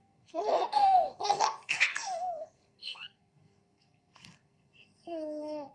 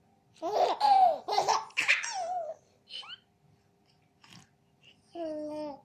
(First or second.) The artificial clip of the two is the first